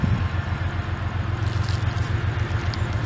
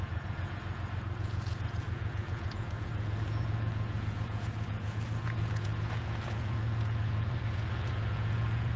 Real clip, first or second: first